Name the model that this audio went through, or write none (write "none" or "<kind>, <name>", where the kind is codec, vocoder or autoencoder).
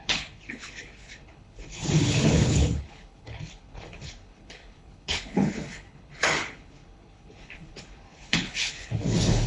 codec, HILCodec